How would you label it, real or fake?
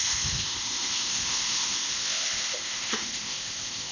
fake